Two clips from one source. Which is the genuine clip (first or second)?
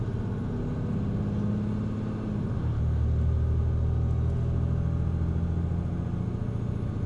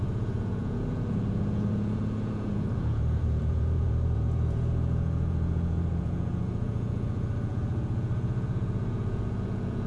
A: first